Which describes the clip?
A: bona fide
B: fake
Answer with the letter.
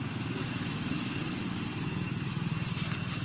A